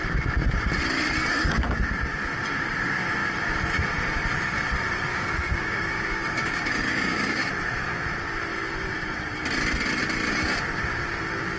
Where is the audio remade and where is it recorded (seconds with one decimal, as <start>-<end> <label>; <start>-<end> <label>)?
0.0-1.4 recorded; 1.4-1.9 remade; 1.9-5.1 recorded; 5.1-7.5 remade; 7.5-11.6 recorded